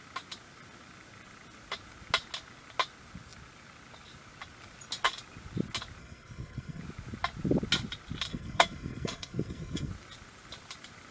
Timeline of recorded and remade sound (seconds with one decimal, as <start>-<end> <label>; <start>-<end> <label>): 0.0-6.0 recorded; 6.0-6.8 remade; 6.8-8.3 recorded; 8.3-9.9 remade; 9.9-11.1 recorded